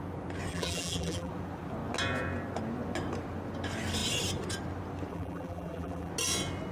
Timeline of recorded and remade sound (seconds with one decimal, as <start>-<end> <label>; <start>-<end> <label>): 0.0-0.5 recorded; 0.5-1.3 remade; 1.3-5.1 recorded; 5.1-6.1 remade; 6.1-6.7 recorded